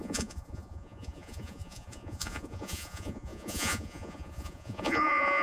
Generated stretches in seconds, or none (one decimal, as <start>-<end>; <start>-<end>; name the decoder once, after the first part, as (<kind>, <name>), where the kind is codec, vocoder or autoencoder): 0.0-5.4 (vocoder, Vocos)